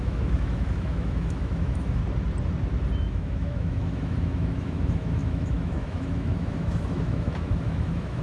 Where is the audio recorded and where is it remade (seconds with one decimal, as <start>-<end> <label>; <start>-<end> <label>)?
0.0-2.0 remade; 2.0-3.0 recorded; 3.0-8.2 remade